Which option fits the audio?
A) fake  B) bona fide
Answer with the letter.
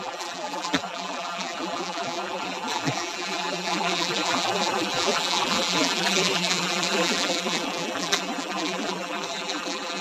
A